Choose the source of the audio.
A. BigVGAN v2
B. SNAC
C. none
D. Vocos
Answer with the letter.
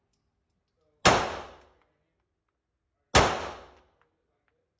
C